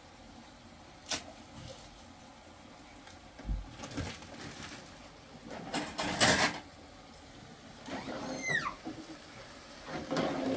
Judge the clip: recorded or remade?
recorded